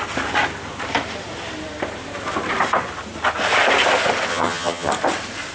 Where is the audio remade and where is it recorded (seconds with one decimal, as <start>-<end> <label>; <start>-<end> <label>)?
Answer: 0.0-4.3 recorded; 4.3-4.9 remade; 4.9-5.5 recorded